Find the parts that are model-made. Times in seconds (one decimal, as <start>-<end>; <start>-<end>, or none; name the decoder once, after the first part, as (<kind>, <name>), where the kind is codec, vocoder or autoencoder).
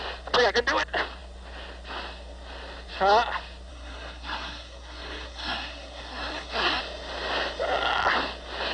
3.7-6.8 (codec, SNAC)